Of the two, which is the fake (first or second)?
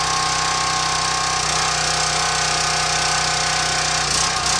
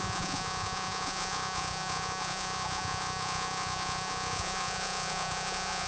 second